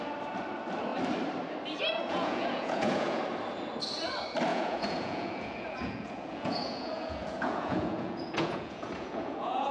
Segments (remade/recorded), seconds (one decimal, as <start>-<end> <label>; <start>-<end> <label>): 0.0-2.0 recorded; 2.0-3.2 remade; 3.2-4.5 recorded; 4.5-9.7 remade